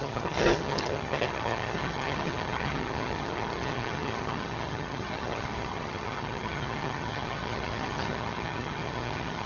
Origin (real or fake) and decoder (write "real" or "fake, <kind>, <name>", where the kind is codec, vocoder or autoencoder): fake, vocoder, HiFi-GAN